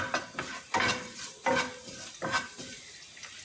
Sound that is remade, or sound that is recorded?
recorded